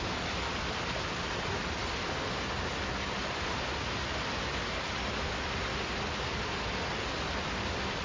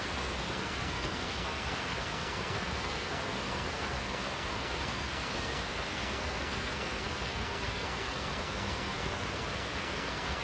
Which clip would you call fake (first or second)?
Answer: second